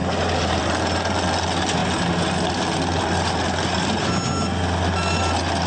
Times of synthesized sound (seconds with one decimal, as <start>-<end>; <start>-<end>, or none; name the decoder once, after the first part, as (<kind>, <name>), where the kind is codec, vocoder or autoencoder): none